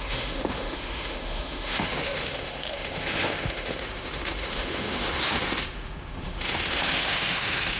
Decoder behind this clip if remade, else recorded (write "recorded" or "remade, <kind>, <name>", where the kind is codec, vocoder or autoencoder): remade, autoencoder, DAC-VAE